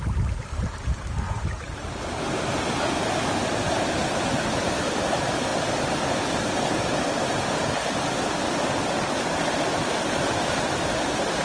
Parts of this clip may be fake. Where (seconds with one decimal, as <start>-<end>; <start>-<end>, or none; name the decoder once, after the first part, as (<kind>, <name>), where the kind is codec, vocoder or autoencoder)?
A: none